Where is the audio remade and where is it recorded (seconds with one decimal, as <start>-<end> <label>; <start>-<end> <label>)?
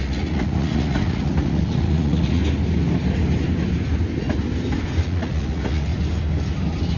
0.0-2.4 remade; 2.4-5.0 recorded; 5.0-5.9 remade; 5.9-7.0 recorded